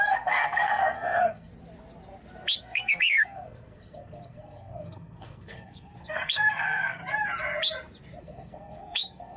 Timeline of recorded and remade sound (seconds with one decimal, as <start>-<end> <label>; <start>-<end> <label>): 0.0-1.5 remade; 1.5-2.6 recorded; 2.6-7.0 remade; 7.0-8.2 recorded; 8.2-9.4 remade